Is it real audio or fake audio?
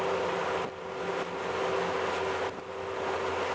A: real